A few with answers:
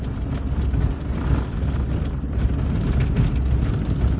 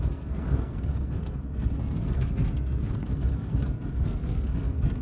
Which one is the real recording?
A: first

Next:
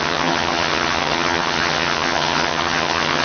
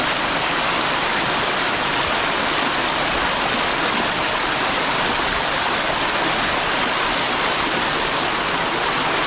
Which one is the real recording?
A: second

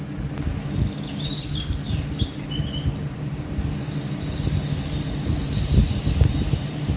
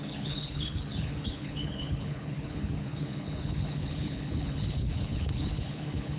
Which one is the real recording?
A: first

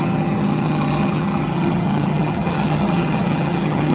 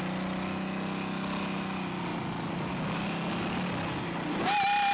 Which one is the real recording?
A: second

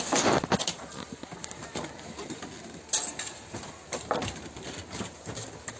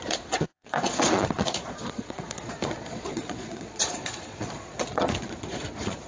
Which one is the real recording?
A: first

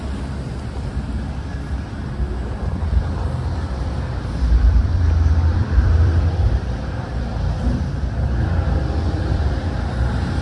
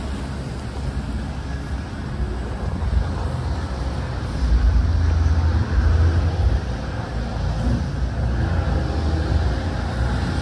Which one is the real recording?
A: second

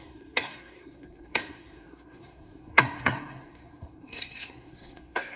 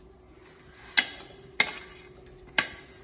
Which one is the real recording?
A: second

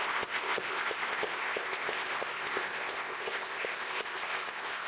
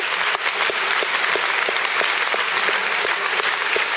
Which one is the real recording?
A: second